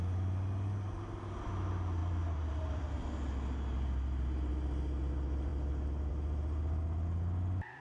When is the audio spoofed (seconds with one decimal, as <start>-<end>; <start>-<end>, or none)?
2.0-2.9